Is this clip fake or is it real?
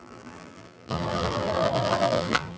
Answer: fake